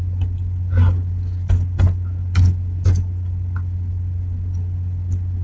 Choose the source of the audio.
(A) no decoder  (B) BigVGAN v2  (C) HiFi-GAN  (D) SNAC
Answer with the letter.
A